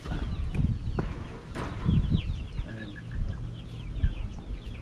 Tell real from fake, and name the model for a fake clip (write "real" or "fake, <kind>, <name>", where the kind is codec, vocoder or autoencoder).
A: real